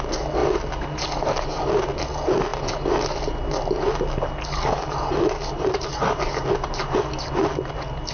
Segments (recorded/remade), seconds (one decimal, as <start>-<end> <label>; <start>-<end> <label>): 0.0-8.1 recorded